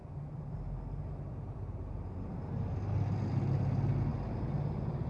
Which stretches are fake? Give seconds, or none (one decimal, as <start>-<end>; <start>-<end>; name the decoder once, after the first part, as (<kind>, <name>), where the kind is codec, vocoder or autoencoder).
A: 0.0-2.5 (vocoder, BigVGAN v2); 4.1-5.1